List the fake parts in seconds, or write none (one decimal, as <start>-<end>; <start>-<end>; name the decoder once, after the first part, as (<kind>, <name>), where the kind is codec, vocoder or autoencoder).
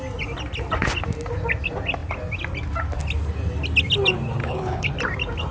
4.4-4.9 (codec, HILCodec)